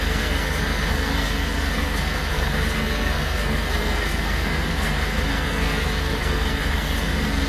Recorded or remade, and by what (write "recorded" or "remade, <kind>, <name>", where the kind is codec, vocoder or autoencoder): remade, codec, SNAC